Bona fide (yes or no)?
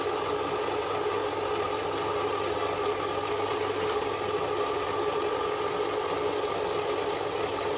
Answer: yes